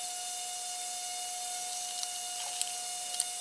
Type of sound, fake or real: real